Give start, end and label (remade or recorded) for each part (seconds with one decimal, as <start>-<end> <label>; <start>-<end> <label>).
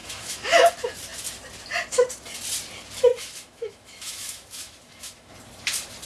0.0-0.6 remade; 0.6-3.1 recorded; 3.1-5.3 remade; 5.3-6.1 recorded